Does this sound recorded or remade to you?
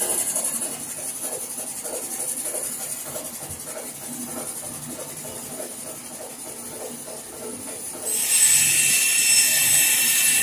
recorded